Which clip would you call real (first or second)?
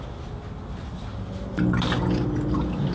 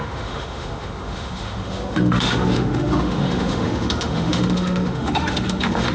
first